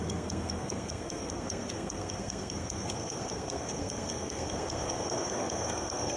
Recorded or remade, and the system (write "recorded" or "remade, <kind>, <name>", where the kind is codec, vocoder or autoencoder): remade, codec, SNAC